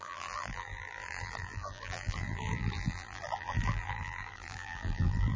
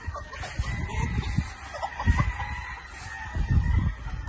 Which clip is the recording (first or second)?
second